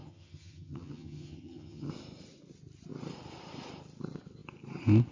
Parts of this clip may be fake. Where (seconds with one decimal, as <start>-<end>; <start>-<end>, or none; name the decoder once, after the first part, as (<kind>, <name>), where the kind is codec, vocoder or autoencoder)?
0.0-1.9 (vocoder, HiFi-GAN)